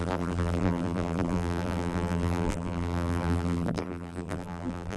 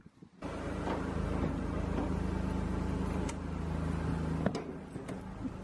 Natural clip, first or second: second